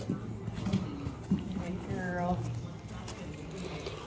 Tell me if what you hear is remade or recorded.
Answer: recorded